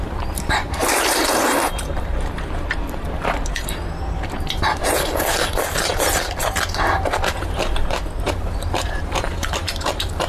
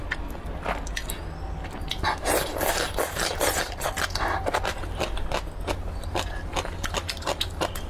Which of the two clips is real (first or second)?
second